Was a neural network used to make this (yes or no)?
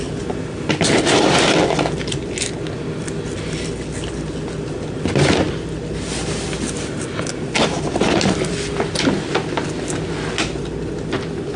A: no